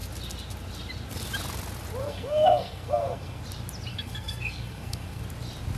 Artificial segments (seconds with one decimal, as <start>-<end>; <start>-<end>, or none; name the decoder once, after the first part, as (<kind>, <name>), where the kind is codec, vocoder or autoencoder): 2.0-3.4 (codec, SNAC); 3.9-5.2